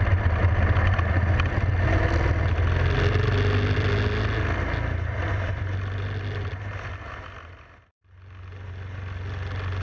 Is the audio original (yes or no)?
yes